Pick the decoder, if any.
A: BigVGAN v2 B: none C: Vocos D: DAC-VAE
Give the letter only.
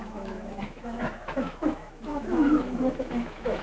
D